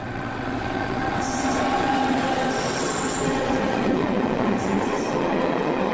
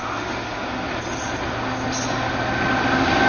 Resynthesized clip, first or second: first